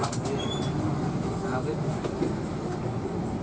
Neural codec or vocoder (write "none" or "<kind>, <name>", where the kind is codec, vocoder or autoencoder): none